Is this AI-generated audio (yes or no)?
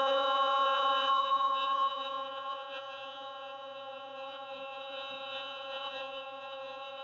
yes